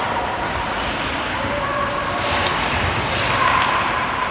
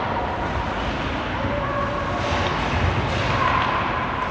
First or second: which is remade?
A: first